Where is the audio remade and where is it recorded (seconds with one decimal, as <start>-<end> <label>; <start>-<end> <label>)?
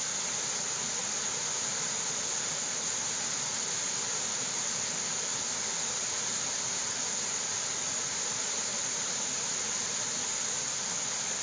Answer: 0.0-11.4 recorded